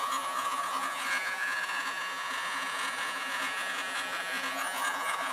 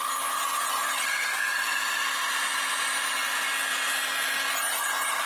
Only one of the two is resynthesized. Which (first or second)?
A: first